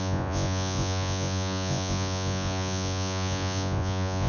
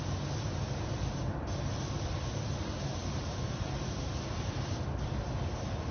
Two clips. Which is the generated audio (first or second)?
first